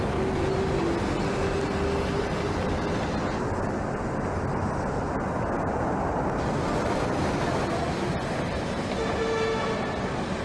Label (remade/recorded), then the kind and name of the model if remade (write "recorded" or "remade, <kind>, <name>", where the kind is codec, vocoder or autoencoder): recorded